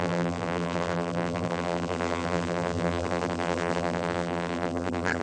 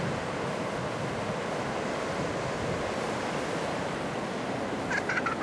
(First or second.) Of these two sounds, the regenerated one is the first